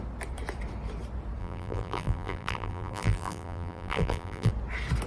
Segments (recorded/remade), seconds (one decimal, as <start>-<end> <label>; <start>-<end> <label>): 0.0-1.4 recorded; 1.4-4.5 remade; 4.5-5.1 recorded